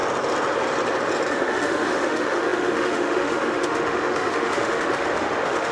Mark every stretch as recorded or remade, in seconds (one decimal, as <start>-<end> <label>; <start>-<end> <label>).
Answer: 0.0-1.3 recorded; 1.3-5.7 remade

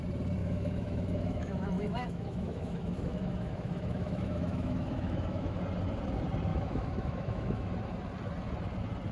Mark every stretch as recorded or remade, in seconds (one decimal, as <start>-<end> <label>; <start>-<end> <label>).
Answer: 0.0-0.4 recorded; 0.4-5.6 remade; 5.6-6.5 recorded; 6.5-7.7 remade; 7.7-9.1 recorded

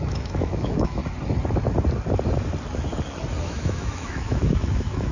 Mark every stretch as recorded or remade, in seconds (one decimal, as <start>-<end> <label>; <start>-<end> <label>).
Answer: 0.0-1.0 remade; 1.0-3.4 recorded; 3.4-5.1 remade

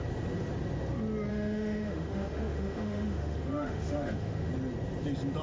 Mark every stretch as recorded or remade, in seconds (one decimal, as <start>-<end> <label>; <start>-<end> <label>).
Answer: 0.0-1.3 recorded; 1.3-4.5 remade; 4.5-5.4 recorded